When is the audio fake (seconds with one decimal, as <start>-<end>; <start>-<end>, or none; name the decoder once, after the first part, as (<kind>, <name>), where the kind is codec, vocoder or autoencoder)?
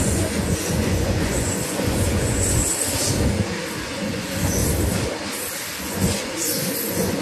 0.0-2.6 (vocoder, Vocos); 3.8-4.6; 5.8-7.2